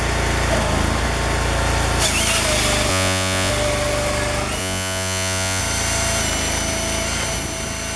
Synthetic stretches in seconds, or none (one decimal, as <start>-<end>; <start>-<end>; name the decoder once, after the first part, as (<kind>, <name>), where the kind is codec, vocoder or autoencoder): 2.9-3.5 (vocoder, Vocos); 4.6-5.6